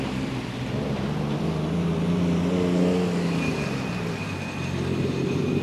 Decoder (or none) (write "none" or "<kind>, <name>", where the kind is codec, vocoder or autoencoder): none